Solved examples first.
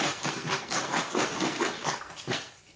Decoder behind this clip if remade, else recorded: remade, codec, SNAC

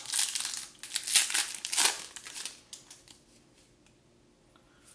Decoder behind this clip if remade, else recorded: recorded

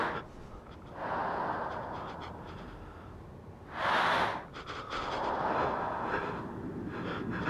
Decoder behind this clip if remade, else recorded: recorded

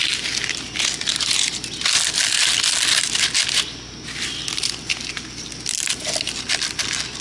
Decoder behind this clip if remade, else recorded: recorded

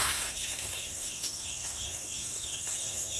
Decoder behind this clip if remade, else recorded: remade, codec, SNAC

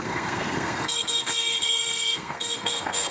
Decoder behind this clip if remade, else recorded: remade, codec, SNAC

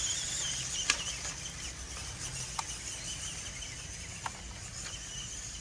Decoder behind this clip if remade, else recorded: recorded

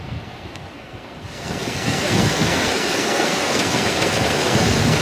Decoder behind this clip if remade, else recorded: remade, codec, SNAC